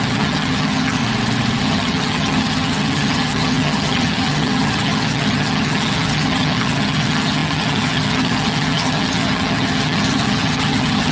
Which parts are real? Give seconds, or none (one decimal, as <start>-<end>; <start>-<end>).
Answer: 1.0-1.6